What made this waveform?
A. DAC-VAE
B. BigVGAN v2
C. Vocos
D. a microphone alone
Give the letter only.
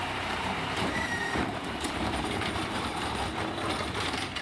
B